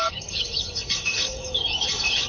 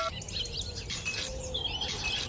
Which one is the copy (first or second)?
first